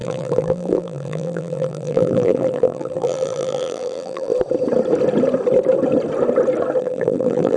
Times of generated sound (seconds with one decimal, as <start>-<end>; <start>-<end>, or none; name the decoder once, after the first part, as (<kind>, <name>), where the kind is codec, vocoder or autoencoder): 0.0-4.3 (vocoder, BigVGAN v2); 6.8-7.6